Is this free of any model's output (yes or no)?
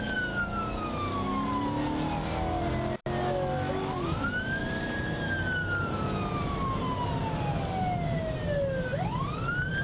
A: yes